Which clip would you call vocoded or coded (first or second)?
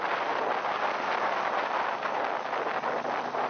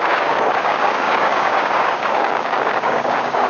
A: second